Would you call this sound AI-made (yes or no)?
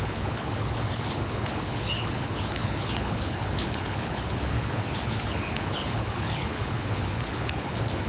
yes